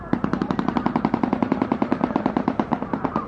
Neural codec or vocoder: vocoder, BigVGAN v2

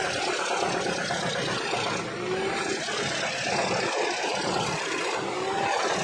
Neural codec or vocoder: none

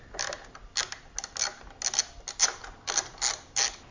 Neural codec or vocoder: none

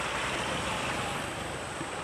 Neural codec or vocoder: vocoder, BigVGAN v2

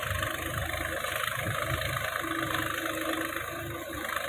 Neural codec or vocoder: none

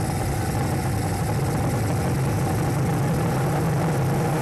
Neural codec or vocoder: none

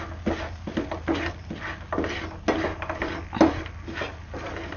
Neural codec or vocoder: none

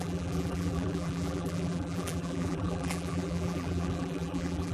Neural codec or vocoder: vocoder, BigVGAN v2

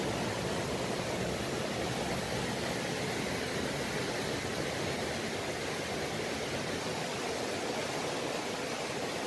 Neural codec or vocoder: none